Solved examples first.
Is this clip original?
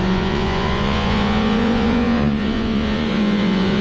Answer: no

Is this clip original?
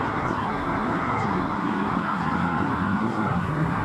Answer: no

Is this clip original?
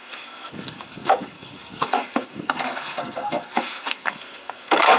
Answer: no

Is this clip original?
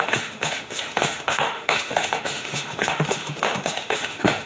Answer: no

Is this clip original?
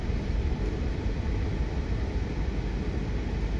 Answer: yes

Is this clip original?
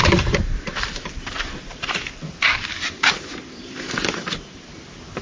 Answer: no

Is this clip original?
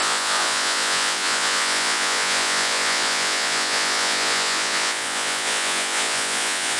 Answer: no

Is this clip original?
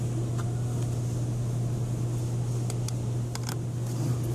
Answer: yes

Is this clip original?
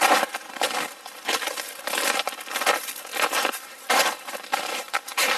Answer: no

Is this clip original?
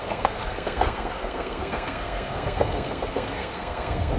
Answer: no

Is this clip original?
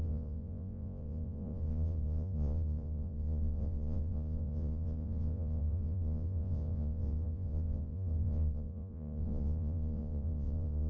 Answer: no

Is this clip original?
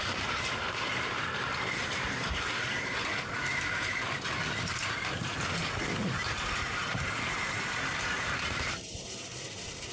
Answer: no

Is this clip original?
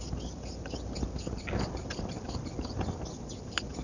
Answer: yes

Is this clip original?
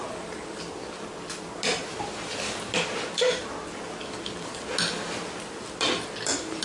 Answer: yes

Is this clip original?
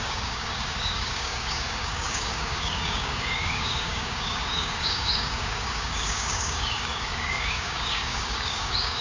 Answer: no